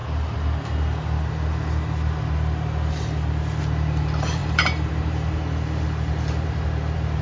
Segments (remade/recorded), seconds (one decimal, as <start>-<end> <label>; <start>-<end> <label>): 0.0-3.6 recorded; 3.6-7.2 remade